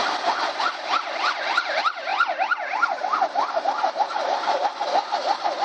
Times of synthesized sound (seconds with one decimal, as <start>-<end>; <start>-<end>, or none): none